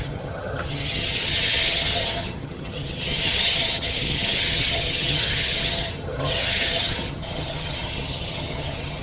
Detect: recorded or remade remade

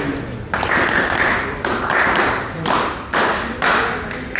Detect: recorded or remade recorded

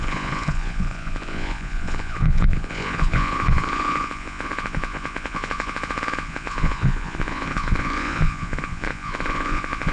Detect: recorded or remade remade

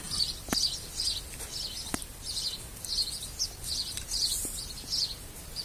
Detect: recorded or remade recorded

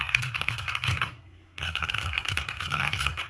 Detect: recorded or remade remade